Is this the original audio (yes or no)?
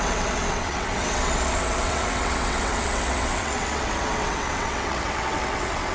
no